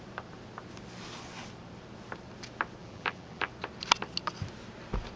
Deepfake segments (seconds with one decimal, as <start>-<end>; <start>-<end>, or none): 2.8-3.5